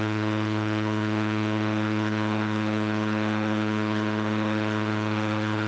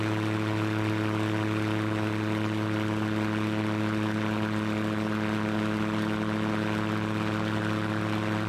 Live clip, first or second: second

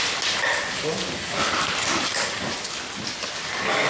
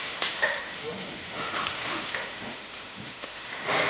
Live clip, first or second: first